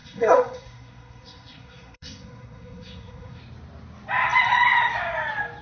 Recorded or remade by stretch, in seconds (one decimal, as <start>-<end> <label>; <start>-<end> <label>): 0.0-3.4 remade; 3.4-5.6 recorded